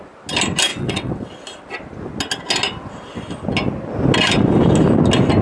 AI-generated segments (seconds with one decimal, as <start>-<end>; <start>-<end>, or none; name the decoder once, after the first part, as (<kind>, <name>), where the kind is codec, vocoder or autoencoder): 0.7-1.3 (vocoder, WaveNeXt)

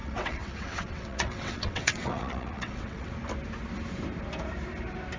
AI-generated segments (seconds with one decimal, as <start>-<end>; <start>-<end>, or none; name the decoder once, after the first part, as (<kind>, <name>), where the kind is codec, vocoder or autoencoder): 0.0-3.1 (vocoder, WaveNeXt)

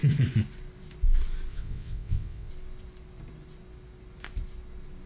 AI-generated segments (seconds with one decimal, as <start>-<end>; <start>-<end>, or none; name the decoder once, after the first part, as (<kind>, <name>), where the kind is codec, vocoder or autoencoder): 1.5-2.5 (vocoder, WaveNeXt)

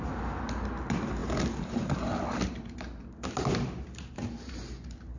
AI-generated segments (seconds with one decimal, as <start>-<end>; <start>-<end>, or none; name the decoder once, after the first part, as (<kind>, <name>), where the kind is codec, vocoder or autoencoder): none